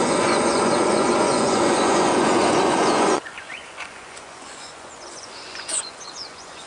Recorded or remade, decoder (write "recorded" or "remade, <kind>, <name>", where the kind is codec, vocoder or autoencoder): remade, vocoder, Vocos